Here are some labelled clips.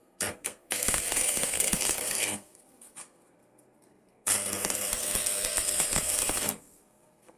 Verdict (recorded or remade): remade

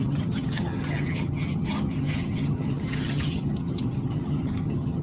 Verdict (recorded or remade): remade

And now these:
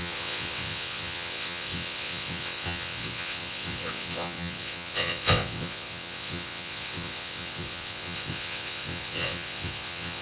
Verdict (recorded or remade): remade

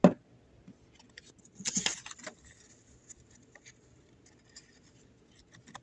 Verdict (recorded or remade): recorded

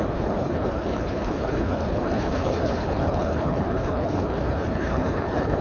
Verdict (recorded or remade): remade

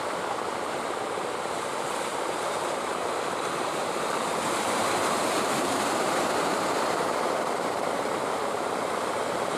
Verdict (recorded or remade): remade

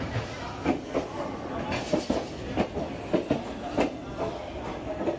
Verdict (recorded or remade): recorded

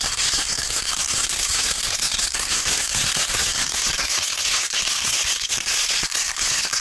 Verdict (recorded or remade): remade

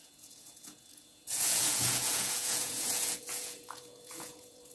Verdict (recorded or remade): remade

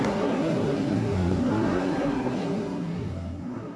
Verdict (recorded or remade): remade